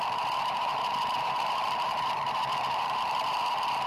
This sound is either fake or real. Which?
fake